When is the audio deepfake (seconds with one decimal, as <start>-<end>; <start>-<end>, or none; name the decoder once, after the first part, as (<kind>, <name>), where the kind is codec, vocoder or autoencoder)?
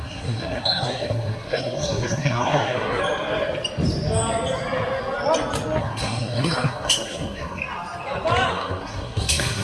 0.0-3.0 (codec, SNAC); 5.8-7.6; 8.5-9.6